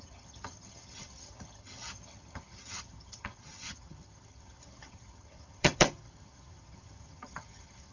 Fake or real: fake